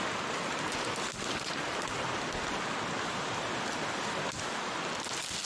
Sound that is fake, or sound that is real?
real